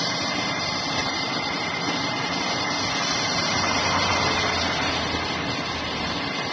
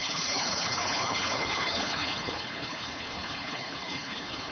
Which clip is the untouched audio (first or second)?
first